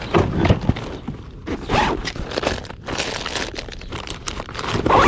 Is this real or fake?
real